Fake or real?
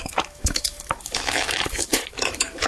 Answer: fake